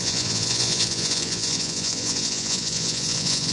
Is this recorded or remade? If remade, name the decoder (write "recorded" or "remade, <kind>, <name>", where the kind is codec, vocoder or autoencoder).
remade, vocoder, Vocos